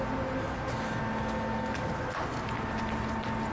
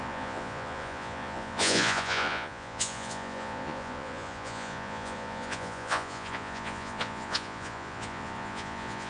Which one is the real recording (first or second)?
first